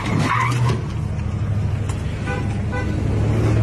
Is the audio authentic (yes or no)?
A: yes